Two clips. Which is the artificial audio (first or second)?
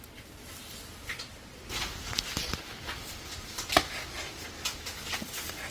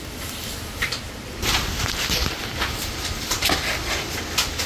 second